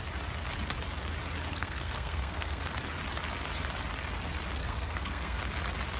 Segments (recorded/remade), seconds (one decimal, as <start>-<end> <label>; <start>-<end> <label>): 0.0-1.5 recorded; 1.5-2.6 remade; 2.6-4.6 recorded; 4.6-5.4 remade; 5.4-6.0 recorded